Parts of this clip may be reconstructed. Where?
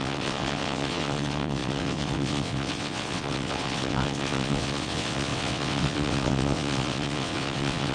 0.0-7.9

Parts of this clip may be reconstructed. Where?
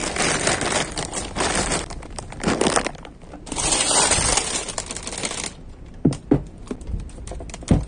0.0-2.5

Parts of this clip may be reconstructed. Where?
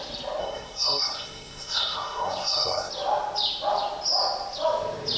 0.4-2.9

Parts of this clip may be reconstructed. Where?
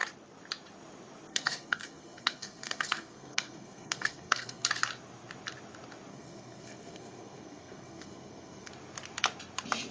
1.3-4.7; 6.1-8.7